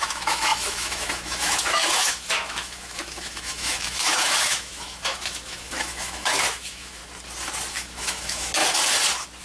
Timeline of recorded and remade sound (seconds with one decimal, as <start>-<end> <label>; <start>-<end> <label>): 0.0-7.0 remade; 7.0-7.7 recorded; 7.7-8.6 remade; 8.6-9.4 recorded